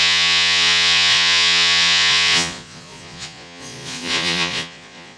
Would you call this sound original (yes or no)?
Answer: no